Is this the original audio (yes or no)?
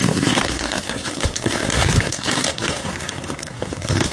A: no